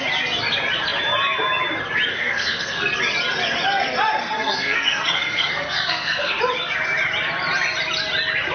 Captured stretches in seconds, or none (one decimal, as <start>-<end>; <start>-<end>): 0.0-2.1; 2.9-4.2; 6.4-8.5